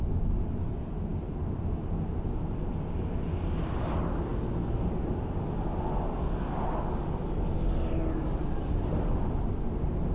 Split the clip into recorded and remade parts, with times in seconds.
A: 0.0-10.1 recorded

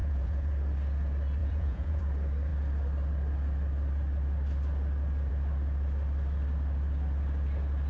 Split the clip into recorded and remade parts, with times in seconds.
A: 0.0-0.5 remade; 0.5-1.4 recorded; 1.4-2.0 remade; 2.0-7.9 recorded

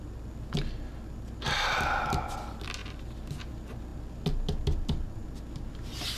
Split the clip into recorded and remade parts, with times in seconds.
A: 0.0-6.2 recorded

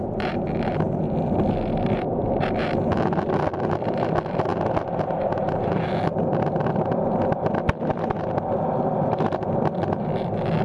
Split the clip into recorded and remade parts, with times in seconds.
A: 0.0-10.6 recorded